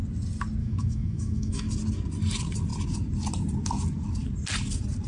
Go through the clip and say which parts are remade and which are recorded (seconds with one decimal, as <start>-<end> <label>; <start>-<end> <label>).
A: 0.0-0.6 recorded; 0.6-1.7 remade; 1.7-5.1 recorded